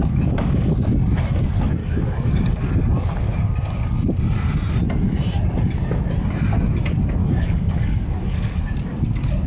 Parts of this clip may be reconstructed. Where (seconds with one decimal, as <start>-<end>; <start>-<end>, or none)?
0.0-0.7; 1.8-2.6; 7.2-8.6